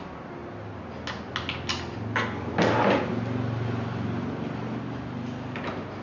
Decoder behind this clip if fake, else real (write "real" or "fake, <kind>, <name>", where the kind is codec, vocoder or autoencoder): real